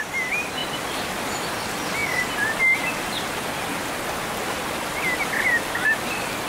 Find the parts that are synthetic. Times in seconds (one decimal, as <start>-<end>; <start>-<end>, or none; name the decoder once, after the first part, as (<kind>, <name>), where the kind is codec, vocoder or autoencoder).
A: none